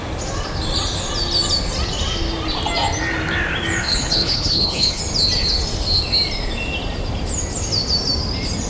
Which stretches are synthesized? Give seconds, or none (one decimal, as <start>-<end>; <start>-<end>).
3.8-5.0